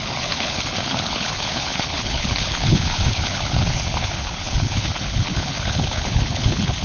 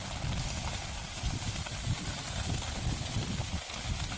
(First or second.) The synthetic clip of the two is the first